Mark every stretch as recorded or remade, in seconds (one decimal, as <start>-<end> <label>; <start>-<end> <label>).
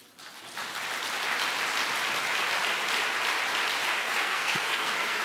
0.0-4.0 recorded; 4.0-5.2 remade